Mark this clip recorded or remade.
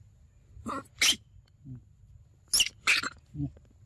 recorded